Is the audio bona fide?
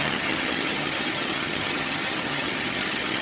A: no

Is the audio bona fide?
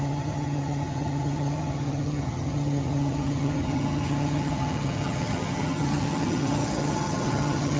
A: no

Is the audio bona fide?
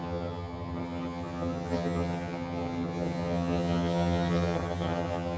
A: no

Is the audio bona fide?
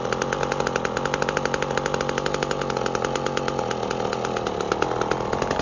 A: yes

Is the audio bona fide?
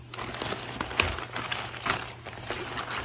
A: yes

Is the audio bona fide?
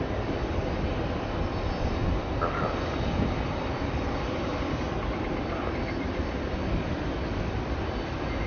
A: yes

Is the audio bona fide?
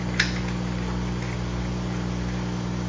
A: yes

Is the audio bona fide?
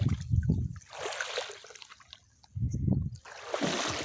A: yes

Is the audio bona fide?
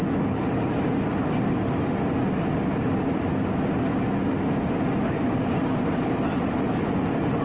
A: yes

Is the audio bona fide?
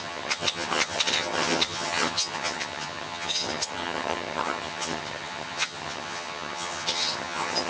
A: no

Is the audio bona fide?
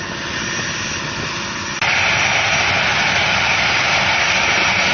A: yes